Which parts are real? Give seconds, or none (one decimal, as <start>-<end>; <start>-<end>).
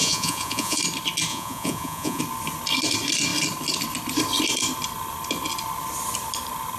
0.8-1.3; 2.2-6.8